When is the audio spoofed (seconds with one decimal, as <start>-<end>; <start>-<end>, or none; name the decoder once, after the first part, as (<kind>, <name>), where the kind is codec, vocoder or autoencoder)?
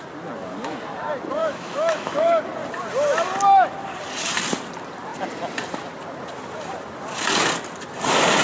1.4-2.4 (autoencoder, DAC-VAE)